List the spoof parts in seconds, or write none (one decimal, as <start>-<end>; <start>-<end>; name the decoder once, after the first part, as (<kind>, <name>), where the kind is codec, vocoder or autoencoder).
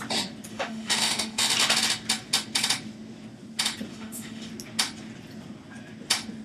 0.5-1.4 (autoencoder, DAC-VAE); 3.9-4.5